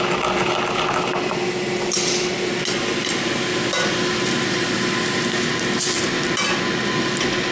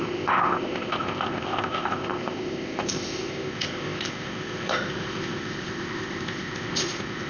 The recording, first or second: first